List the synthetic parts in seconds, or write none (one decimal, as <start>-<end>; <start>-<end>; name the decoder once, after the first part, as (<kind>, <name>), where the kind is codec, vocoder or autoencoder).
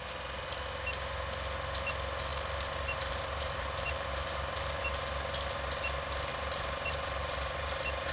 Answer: 2.3-4.8 (vocoder, BigVGAN v2); 6.3-8.1